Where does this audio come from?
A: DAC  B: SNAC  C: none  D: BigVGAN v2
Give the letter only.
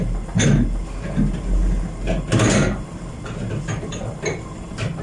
C